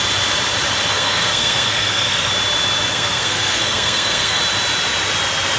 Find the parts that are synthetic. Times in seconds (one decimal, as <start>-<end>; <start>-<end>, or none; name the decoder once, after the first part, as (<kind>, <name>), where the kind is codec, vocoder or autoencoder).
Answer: 0.9-2.3 (codec, SNAC); 2.9-4.4